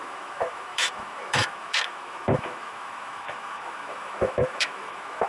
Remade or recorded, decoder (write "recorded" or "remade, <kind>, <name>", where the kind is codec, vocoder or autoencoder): remade, autoencoder, DAC-VAE